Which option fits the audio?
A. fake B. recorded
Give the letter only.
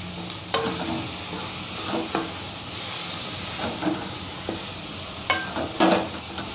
B